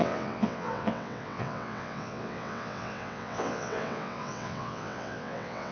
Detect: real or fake fake